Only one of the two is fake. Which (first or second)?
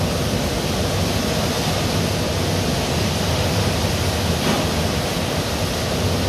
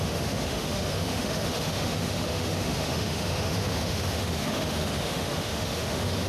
second